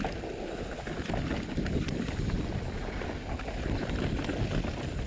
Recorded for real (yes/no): yes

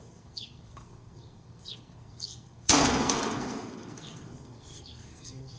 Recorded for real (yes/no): no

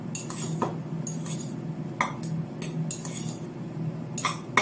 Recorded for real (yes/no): yes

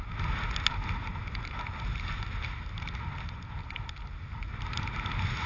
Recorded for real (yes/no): yes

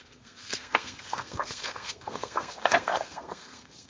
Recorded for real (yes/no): no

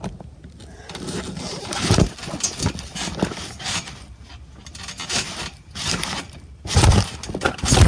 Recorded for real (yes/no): yes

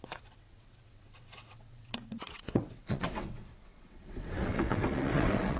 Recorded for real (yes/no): no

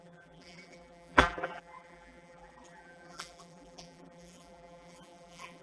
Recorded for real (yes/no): no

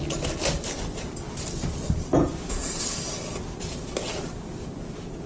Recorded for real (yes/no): yes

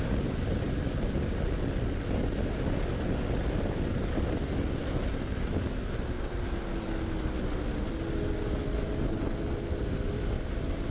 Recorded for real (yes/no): yes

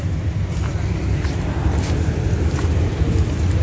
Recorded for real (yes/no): yes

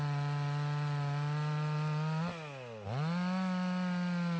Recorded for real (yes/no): yes